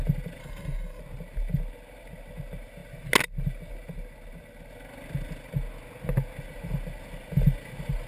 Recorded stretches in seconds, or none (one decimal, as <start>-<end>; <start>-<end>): 0.0-0.4; 1.0-8.1

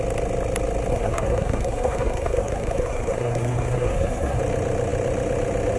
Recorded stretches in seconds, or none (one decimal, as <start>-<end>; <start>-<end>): 0.0-0.9; 4.4-5.8

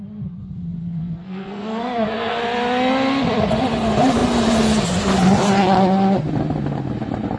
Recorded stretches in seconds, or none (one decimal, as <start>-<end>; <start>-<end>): 0.0-0.8; 2.4-7.4

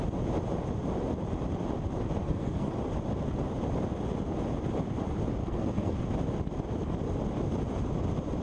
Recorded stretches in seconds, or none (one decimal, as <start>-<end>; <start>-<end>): 0.0-2.2; 2.7-5.4; 6.0-8.4

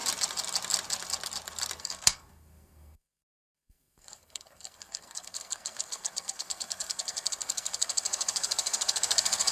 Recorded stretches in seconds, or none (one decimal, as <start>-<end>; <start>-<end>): 0.0-1.8

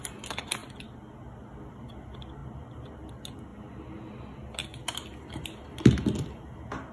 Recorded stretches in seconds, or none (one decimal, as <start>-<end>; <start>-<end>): 0.0-6.9

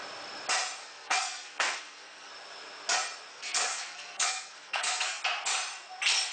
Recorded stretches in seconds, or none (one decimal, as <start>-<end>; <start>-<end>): 0.0-0.8; 2.3-3.3; 5.2-6.3

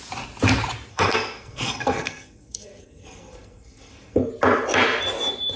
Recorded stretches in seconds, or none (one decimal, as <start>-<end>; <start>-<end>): 0.0-0.9; 4.3-5.6